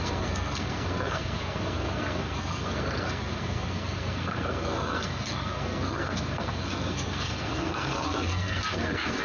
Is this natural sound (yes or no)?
no